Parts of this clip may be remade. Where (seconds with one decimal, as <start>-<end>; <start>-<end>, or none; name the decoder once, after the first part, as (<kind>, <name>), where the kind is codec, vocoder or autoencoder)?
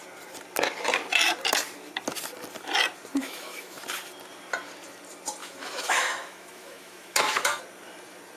3.1-3.8 (autoencoder, DAC-VAE); 5.4-7.6